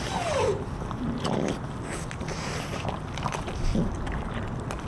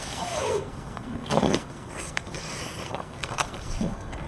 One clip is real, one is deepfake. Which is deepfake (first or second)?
second